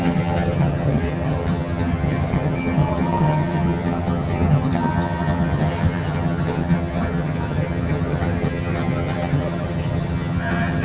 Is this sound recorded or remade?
remade